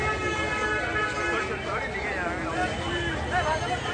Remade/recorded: recorded